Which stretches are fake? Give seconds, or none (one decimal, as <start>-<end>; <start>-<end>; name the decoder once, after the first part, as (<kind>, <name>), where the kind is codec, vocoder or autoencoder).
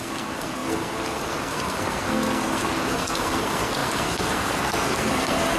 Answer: 0.0-5.6 (codec, SNAC)